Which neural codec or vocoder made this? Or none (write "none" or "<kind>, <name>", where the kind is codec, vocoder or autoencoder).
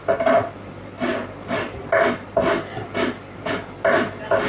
none